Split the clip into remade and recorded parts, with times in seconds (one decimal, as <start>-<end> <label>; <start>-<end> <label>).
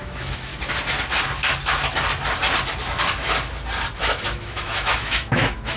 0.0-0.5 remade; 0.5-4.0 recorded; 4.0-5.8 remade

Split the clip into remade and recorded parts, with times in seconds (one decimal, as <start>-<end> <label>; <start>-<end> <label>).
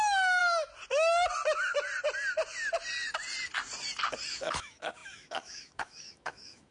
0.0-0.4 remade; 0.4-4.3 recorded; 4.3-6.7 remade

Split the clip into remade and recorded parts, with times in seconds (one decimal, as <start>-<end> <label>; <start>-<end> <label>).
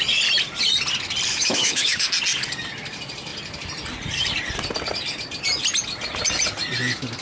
0.0-1.3 recorded; 1.3-2.1 remade; 2.1-7.2 recorded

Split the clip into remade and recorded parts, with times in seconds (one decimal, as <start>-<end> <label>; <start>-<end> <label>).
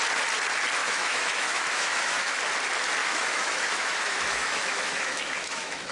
0.0-0.8 recorded; 0.8-2.4 remade; 2.4-3.0 recorded; 3.0-5.9 remade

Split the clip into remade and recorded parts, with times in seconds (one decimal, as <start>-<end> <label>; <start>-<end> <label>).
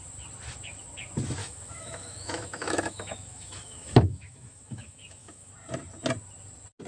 0.0-1.4 recorded; 1.4-5.5 remade; 5.5-6.9 recorded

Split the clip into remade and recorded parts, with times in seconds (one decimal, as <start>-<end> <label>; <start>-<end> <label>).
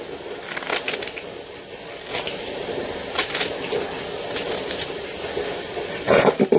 0.0-6.6 recorded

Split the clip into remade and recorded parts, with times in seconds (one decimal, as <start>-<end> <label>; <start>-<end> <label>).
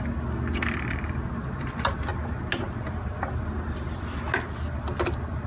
0.0-5.5 recorded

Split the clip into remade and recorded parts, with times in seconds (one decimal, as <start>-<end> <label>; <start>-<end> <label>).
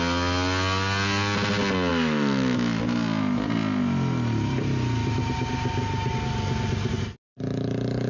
0.0-1.9 recorded; 1.9-2.8 remade; 2.8-8.1 recorded